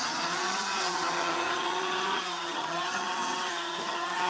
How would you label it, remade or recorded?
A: remade